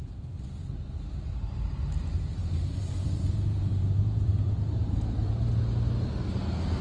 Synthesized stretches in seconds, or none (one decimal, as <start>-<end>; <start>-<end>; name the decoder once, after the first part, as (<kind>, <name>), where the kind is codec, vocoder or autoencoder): 0.6-1.5 (vocoder, BigVGAN v2); 2.0-5.5

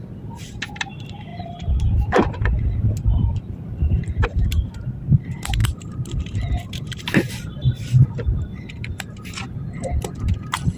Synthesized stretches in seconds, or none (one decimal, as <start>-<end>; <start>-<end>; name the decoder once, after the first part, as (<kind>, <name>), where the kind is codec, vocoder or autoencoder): 1.3-1.8 (vocoder, BigVGAN v2); 4.0-4.6; 5.6-8.9

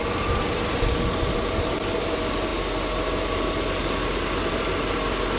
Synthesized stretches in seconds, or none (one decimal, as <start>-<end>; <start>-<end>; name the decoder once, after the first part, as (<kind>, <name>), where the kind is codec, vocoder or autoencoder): none

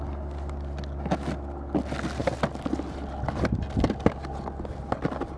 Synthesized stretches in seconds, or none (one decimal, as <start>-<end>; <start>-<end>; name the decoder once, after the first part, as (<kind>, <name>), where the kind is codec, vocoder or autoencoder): none

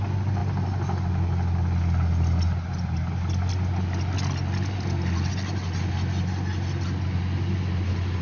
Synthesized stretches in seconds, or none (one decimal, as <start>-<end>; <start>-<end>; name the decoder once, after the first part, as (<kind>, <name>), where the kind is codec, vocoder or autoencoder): none

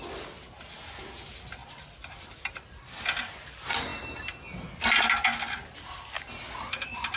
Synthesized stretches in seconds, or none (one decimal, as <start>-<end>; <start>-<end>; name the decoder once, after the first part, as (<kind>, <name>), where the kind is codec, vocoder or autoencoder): none

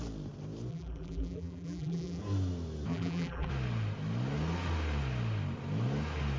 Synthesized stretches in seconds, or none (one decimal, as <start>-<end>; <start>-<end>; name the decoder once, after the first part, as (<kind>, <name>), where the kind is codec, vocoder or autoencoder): 0.7-2.2 (vocoder, BigVGAN v2); 2.9-3.5

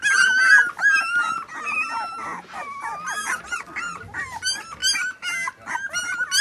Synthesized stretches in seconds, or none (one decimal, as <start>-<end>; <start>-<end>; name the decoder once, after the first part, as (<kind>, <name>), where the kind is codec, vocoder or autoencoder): none